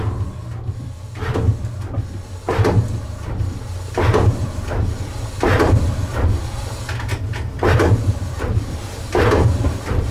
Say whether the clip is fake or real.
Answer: fake